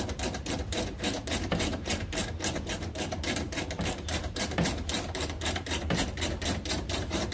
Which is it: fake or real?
fake